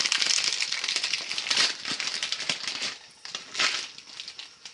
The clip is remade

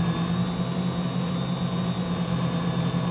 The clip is recorded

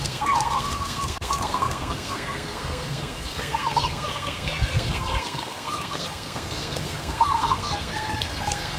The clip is remade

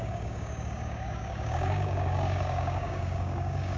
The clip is remade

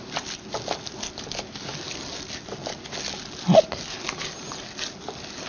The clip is recorded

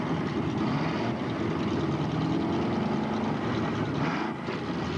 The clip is recorded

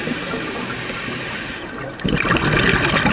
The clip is recorded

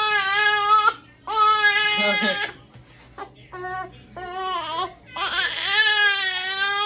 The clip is recorded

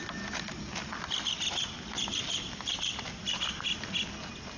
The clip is recorded